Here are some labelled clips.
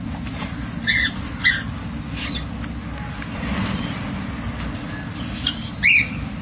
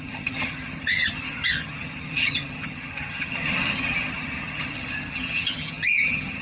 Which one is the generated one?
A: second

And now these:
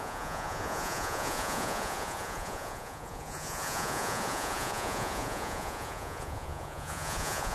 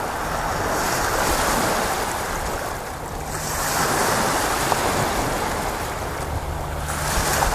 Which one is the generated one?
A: first